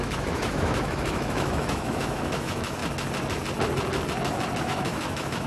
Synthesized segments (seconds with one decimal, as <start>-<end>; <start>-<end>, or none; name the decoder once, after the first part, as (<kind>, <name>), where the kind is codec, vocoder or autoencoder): 0.0-2.8 (autoencoder, DAC-VAE); 4.6-5.5